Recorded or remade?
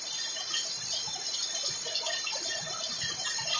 recorded